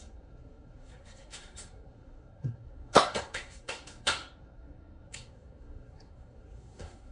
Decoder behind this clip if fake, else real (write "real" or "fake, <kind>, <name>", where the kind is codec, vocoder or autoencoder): fake, codec, SNAC